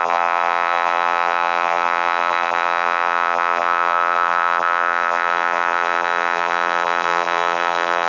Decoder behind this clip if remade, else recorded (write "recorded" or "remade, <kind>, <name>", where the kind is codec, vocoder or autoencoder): remade, vocoder, BigVGAN v2